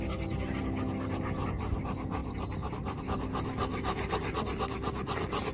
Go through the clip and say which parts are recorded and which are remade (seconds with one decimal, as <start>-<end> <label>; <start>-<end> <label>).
0.0-2.2 recorded; 2.2-3.0 remade; 3.0-5.5 recorded